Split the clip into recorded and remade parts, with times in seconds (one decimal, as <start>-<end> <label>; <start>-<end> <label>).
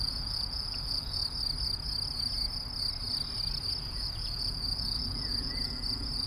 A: 0.0-1.2 remade; 1.2-3.8 recorded; 3.8-6.3 remade